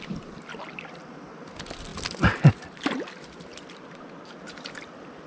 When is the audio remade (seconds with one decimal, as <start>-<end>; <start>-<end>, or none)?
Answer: none